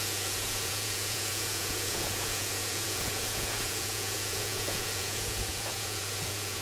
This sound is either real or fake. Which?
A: fake